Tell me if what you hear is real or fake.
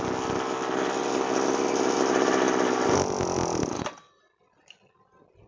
real